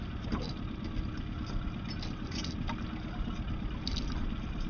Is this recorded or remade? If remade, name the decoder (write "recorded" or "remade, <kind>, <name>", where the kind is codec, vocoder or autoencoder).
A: recorded